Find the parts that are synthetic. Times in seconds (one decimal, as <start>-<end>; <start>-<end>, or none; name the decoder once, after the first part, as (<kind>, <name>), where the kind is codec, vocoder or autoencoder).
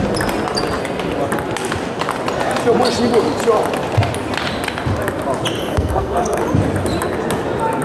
5.7-6.4 (codec, SNAC)